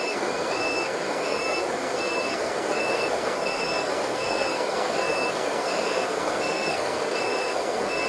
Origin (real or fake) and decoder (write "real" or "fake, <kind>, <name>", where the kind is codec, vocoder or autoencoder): fake, codec, SNAC